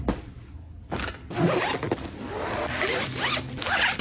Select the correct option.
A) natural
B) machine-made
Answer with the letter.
A